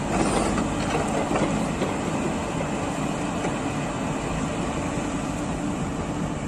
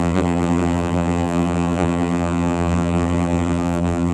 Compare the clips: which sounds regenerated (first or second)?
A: second